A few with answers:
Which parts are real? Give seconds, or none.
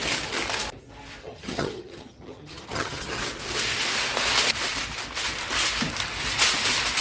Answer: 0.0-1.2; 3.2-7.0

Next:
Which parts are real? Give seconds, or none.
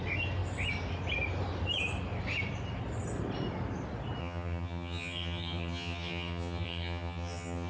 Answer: 0.0-4.2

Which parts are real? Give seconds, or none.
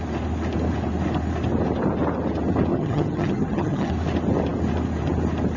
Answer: 0.0-2.7; 3.9-5.6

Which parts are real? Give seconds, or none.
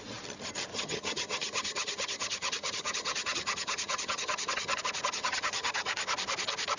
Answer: 0.0-0.7; 4.8-5.2; 5.9-6.8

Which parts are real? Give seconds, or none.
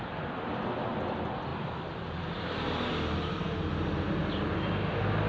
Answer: 0.0-5.3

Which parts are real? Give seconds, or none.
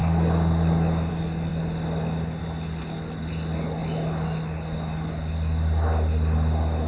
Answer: 0.0-6.9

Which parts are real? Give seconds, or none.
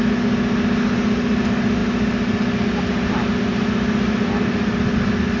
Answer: 0.0-5.4